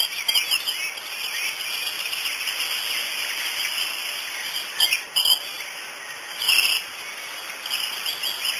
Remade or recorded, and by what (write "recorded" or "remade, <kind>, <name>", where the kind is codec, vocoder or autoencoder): recorded